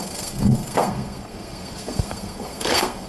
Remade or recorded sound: remade